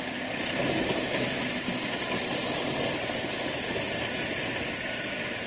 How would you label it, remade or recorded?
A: recorded